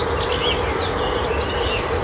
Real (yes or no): yes